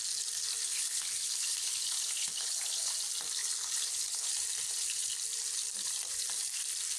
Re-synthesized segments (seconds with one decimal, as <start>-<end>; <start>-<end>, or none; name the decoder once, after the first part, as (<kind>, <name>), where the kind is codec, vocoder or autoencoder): 0.6-2.9 (codec, HILCodec); 3.4-4.3